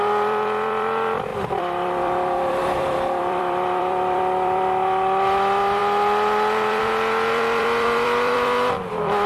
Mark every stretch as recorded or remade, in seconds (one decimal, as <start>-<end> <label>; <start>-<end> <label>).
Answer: 0.0-9.3 remade